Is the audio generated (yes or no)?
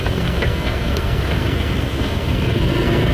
yes